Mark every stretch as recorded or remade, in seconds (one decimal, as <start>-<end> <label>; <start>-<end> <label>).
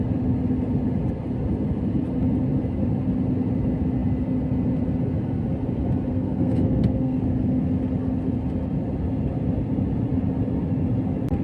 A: 0.0-6.1 recorded; 6.1-7.2 remade; 7.2-11.4 recorded